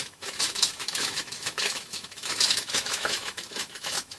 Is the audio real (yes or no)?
no